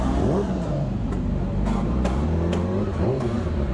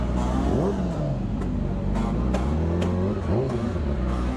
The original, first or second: second